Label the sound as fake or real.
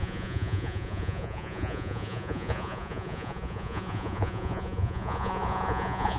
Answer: fake